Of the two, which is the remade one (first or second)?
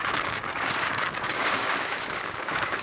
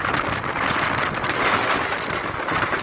first